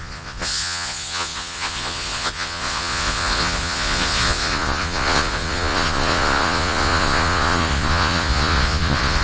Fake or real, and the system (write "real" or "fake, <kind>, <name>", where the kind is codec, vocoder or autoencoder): fake, vocoder, Vocos